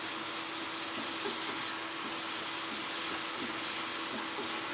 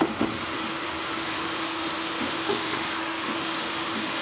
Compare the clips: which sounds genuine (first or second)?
first